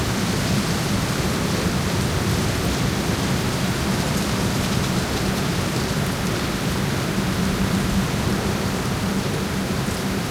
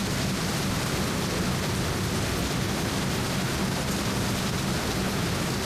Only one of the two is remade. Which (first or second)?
first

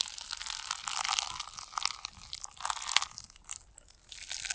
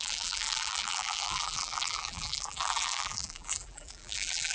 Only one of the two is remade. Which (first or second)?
second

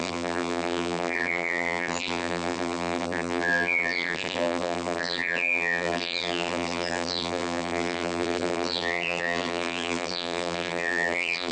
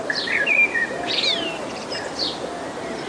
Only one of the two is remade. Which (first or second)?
first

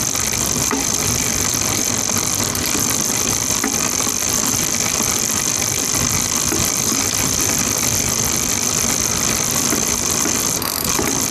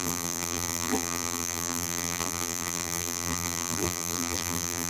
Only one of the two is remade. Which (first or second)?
second